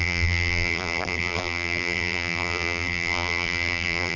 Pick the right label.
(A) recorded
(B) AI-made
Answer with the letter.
B